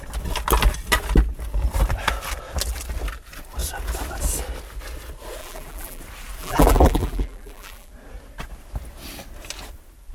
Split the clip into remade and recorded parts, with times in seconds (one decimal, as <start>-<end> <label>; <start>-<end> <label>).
0.0-5.4 recorded; 5.4-6.0 remade; 6.0-6.4 recorded; 6.4-7.9 remade; 7.9-10.1 recorded